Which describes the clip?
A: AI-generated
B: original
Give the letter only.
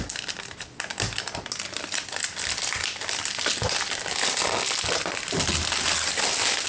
B